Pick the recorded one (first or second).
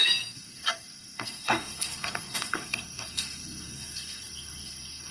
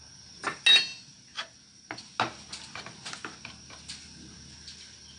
second